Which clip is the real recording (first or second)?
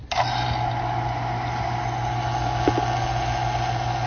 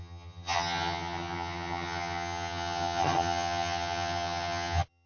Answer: first